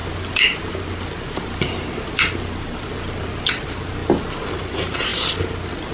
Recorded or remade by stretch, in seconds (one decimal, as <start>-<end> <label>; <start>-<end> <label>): 0.0-4.0 remade; 4.0-4.6 recorded; 4.6-5.9 remade